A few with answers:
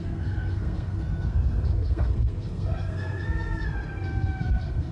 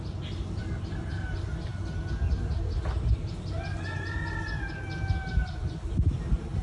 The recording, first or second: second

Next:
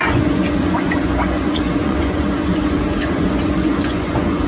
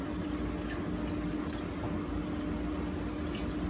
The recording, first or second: second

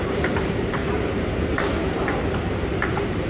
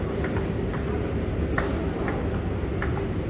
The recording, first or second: second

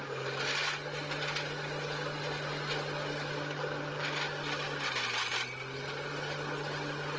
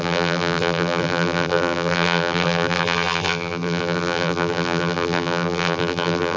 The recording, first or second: first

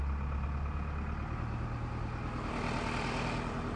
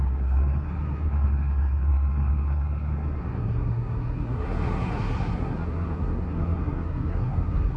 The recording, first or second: first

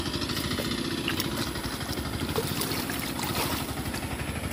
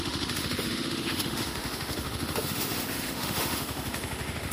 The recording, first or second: first